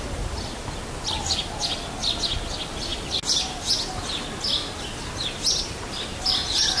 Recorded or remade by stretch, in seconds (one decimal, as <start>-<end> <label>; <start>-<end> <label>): 0.0-6.8 recorded